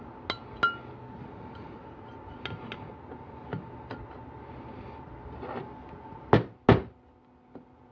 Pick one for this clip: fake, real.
real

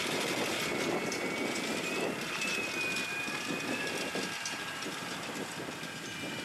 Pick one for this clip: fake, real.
real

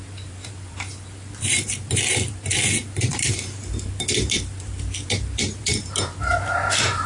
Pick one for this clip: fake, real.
fake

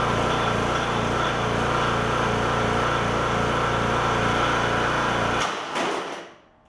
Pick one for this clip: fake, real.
real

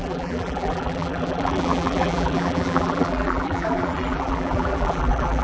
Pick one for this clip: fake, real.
fake